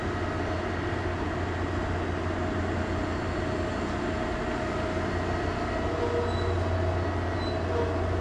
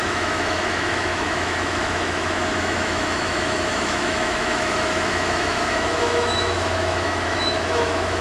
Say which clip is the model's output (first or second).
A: second